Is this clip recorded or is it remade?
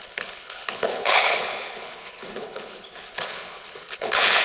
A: remade